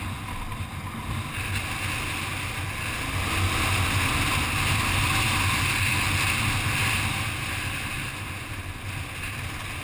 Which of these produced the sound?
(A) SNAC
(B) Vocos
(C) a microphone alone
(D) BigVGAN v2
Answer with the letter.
C